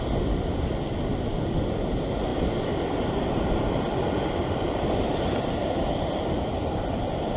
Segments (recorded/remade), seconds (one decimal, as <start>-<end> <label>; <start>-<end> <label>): 0.0-2.3 recorded; 2.3-6.1 remade; 6.1-7.4 recorded